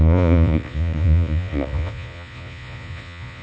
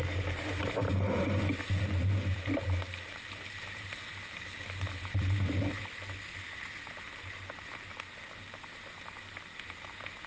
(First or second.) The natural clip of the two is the second